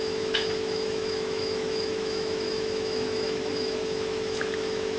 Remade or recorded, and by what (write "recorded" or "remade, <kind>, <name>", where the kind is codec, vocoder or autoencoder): remade, autoencoder, DAC-VAE